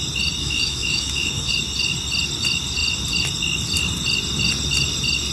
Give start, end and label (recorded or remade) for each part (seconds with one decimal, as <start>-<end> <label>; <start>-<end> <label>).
0.0-0.4 recorded; 0.4-1.5 remade; 1.5-5.3 recorded